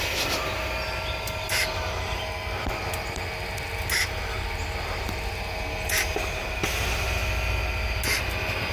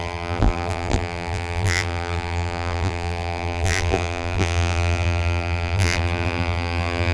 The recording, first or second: first